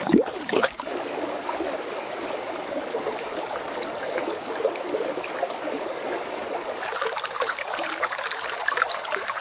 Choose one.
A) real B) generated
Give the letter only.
B